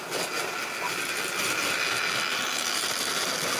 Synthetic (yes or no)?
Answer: no